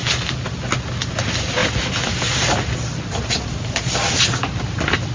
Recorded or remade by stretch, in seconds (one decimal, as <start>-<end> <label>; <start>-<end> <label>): 0.0-5.1 recorded